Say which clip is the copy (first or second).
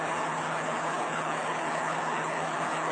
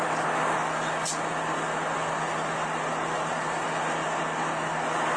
first